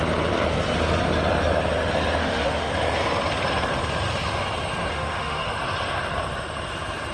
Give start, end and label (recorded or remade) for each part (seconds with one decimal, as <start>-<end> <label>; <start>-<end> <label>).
0.0-2.2 recorded; 2.2-2.7 remade; 2.7-4.9 recorded; 4.9-5.5 remade; 5.5-7.1 recorded